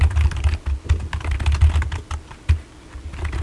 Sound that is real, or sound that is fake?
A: real